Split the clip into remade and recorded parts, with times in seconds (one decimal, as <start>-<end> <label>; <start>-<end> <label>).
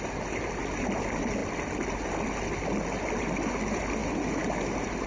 0.0-5.1 recorded